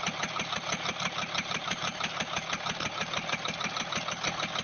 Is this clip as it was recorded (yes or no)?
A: yes